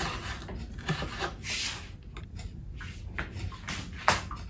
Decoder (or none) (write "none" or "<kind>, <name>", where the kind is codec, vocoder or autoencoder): none